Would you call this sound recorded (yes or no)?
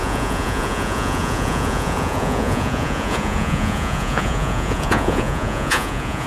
no